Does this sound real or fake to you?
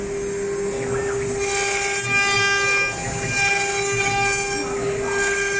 real